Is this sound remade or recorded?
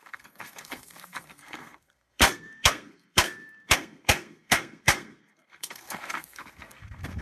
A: remade